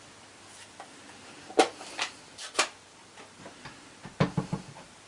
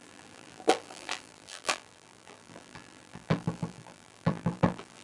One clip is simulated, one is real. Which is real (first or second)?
first